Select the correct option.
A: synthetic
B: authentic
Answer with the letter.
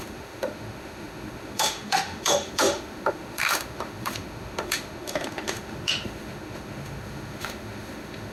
A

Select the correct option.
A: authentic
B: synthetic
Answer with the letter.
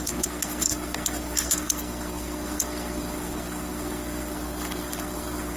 B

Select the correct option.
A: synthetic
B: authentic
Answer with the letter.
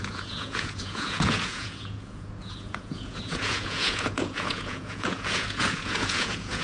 A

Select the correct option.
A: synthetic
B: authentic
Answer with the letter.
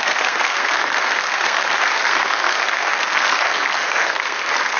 A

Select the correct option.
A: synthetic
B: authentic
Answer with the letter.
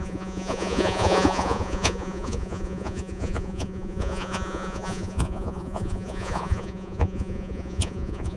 A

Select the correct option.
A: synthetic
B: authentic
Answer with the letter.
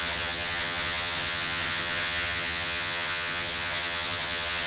A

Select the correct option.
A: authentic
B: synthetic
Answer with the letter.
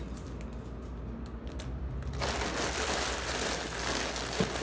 A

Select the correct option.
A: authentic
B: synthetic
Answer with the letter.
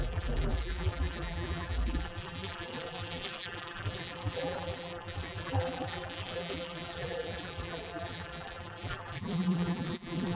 B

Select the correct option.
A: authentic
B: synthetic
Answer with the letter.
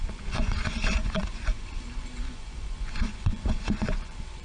B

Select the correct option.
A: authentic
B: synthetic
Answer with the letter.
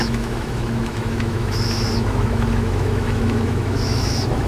B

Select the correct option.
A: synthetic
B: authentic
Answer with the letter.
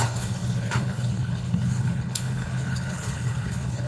A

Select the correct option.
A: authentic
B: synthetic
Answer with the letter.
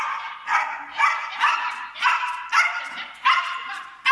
B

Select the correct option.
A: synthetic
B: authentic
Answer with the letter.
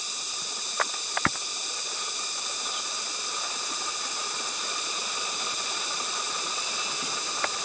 B